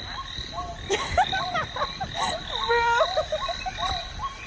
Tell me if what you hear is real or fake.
real